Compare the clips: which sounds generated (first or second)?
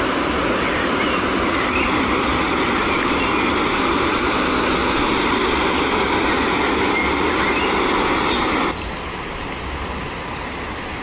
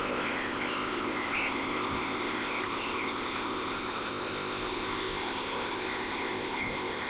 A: second